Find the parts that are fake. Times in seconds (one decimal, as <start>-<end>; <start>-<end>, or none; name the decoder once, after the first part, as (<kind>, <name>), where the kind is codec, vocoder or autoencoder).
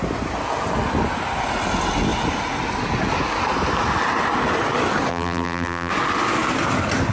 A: 5.1-5.9 (vocoder, BigVGAN v2)